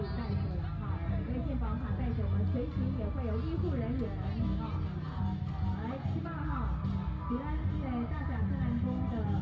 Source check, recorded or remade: recorded